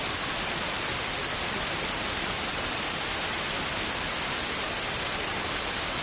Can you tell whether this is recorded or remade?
recorded